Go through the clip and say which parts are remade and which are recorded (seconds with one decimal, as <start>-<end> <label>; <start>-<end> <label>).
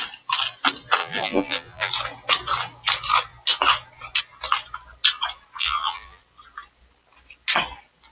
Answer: 0.0-1.0 recorded; 1.0-1.9 remade; 1.9-5.6 recorded; 5.6-6.2 remade; 6.2-8.1 recorded